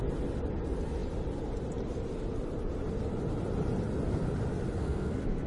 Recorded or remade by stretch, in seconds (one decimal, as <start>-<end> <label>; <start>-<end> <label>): 0.0-4.8 recorded; 4.8-5.5 remade